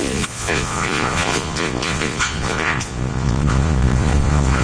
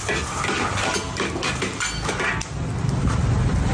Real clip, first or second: second